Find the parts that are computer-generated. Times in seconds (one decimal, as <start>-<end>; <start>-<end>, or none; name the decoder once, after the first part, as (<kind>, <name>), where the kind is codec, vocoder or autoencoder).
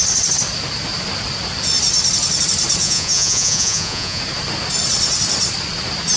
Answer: 2.8-4.2 (vocoder, Vocos)